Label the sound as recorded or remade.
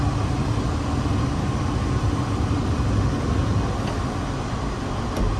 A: recorded